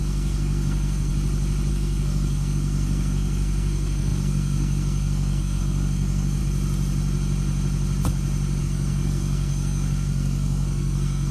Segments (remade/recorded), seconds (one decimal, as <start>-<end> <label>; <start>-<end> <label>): 0.0-1.1 remade; 1.1-1.7 recorded; 1.7-6.4 remade; 6.4-8.6 recorded; 8.6-11.3 remade